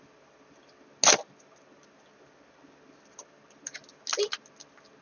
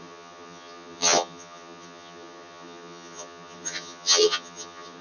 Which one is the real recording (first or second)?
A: first